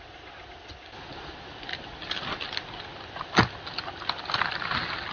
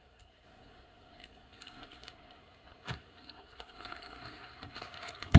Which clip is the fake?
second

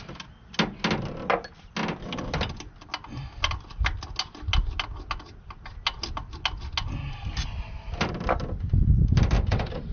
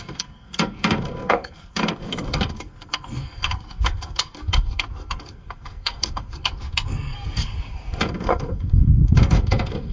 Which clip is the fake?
second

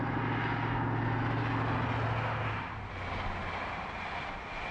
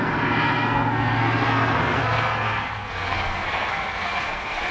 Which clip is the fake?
second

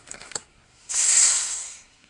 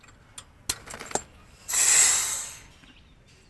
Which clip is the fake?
first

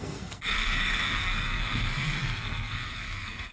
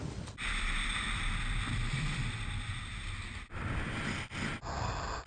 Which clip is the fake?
first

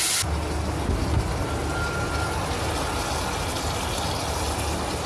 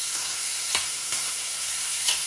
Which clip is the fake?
second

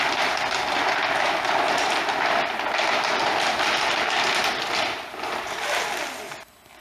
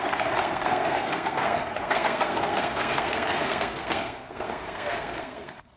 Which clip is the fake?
second